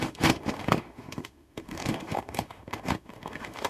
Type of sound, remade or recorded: remade